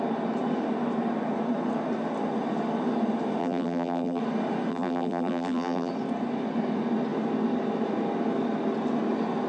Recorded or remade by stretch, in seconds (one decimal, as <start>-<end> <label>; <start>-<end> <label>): 0.0-3.4 recorded; 3.4-4.2 remade; 4.2-4.7 recorded; 4.7-5.9 remade; 5.9-9.5 recorded